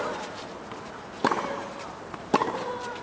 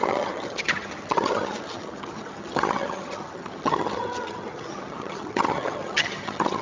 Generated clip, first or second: second